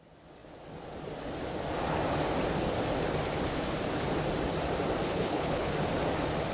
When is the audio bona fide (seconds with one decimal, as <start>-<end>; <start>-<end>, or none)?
0.0-5.1; 5.7-6.5